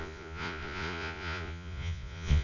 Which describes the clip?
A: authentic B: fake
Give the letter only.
B